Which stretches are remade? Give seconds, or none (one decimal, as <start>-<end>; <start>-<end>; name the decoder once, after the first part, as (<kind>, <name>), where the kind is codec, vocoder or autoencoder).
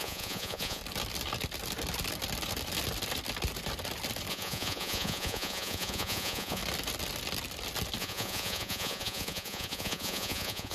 0.0-0.8 (vocoder, Vocos); 4.3-6.6; 8.0-10.7